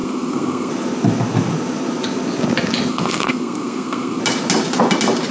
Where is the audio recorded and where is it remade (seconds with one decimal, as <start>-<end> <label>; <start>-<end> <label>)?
0.0-0.7 remade; 0.7-2.9 recorded; 2.9-4.2 remade; 4.2-5.3 recorded